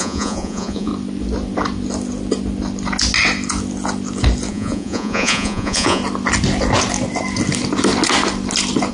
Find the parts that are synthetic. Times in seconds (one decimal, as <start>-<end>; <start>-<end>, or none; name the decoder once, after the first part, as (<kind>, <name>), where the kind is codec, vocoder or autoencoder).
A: 0.0-0.9 (vocoder, Vocos); 4.5-6.0